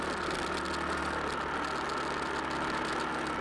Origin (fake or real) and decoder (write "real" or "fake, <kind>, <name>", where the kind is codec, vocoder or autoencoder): real